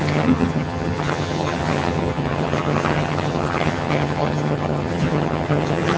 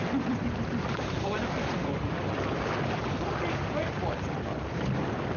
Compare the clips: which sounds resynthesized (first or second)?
first